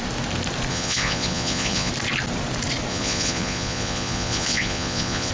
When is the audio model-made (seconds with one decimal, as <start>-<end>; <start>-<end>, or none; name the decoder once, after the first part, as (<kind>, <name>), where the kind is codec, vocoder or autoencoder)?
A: 0.7-1.9 (vocoder, Vocos); 2.9-5.3